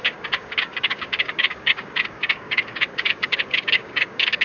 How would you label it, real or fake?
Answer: fake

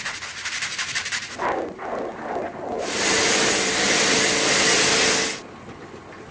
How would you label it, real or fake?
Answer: real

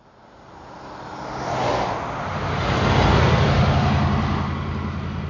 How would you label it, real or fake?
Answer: real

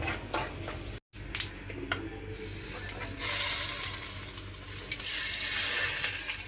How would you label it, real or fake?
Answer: real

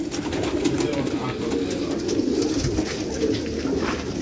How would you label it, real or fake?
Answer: real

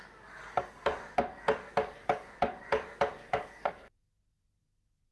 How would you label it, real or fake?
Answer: fake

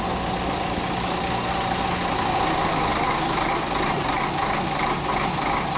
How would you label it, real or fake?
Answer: real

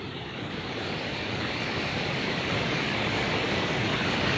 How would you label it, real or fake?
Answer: fake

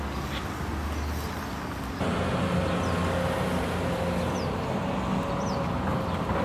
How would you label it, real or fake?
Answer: real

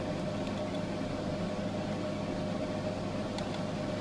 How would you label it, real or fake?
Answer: real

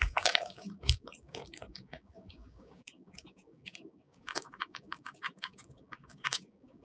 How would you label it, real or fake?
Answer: fake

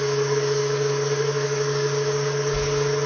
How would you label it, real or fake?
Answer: fake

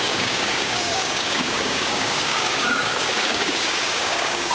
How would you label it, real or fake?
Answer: fake